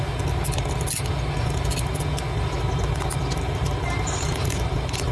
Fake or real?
real